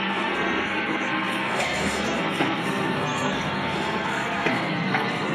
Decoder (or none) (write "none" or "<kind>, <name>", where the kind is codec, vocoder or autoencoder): codec, SNAC